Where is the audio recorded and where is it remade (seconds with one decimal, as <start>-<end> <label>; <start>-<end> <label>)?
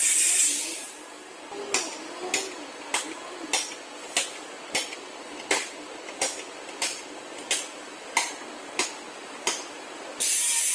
0.0-0.6 remade; 0.6-4.0 recorded; 4.0-4.6 remade; 4.6-10.7 recorded